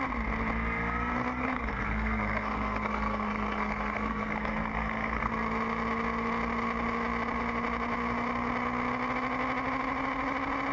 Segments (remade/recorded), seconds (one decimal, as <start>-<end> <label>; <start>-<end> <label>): 0.0-1.4 recorded; 1.4-5.3 remade; 5.3-10.7 recorded